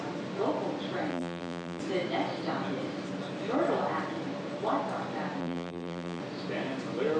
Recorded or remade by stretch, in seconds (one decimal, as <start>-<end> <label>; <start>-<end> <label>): 0.0-1.1 recorded; 1.1-1.8 remade; 1.8-5.4 recorded; 5.4-6.2 remade; 6.2-7.2 recorded